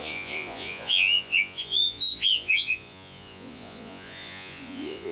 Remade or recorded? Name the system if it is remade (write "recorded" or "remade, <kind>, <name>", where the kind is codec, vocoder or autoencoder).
remade, vocoder, Vocos